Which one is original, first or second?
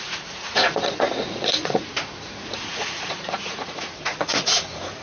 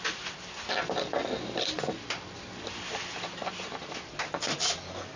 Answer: second